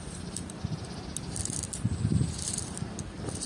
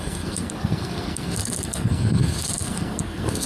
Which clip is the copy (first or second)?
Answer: second